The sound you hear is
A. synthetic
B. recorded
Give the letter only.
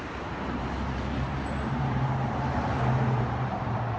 A